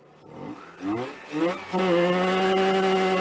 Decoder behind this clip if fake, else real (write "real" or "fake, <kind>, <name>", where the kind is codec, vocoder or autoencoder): real